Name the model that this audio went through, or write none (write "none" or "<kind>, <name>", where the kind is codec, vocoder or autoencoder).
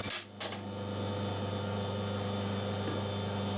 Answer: none